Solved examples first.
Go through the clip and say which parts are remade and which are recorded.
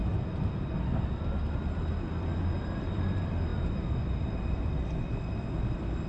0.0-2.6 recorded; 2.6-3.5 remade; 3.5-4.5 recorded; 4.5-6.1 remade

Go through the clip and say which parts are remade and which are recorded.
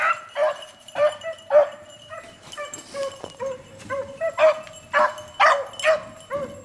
0.0-0.4 recorded; 0.4-4.3 remade; 4.3-6.6 recorded